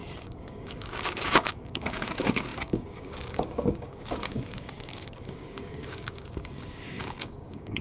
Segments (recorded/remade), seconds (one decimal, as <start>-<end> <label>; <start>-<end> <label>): 0.0-7.8 remade